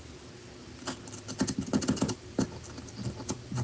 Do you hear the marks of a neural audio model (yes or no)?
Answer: no